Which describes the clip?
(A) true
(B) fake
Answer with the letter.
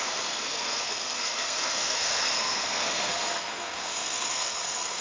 B